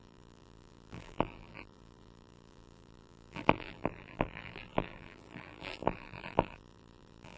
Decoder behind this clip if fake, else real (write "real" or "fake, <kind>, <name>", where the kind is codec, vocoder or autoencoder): fake, vocoder, BigVGAN v2